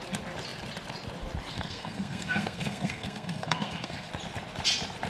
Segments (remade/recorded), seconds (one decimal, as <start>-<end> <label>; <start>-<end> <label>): 0.0-1.5 recorded; 1.5-4.1 remade; 4.1-5.1 recorded